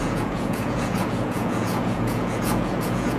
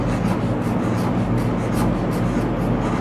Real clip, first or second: second